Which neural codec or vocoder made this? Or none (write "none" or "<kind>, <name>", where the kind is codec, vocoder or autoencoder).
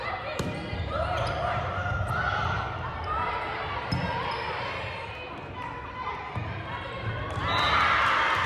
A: none